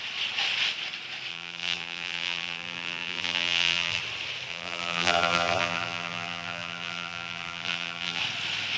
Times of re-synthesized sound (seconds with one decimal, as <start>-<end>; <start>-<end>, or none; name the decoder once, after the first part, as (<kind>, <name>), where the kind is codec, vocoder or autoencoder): 1.3-4.0 (vocoder, BigVGAN v2); 4.5-8.2